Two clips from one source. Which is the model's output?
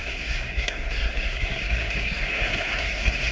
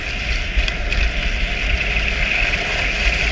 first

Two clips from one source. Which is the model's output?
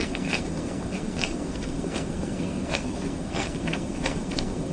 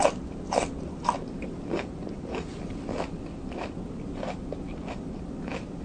first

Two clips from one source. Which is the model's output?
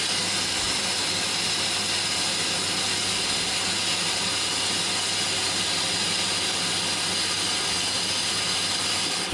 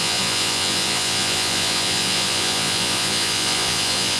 second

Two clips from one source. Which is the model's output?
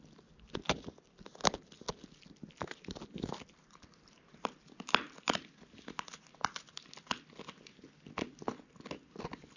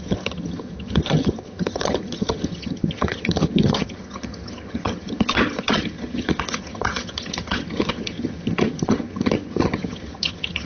second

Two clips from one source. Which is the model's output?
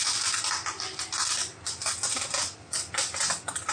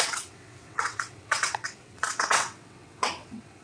second